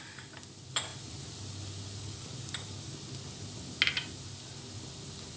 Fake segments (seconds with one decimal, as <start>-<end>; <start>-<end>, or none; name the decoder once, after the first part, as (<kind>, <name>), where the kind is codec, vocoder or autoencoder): none